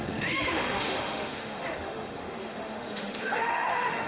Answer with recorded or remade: remade